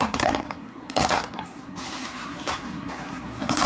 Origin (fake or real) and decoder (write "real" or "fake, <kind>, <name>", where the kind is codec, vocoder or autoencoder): fake, codec, SNAC